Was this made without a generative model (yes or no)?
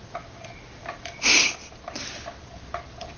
yes